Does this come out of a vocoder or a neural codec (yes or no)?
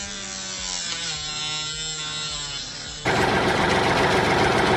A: no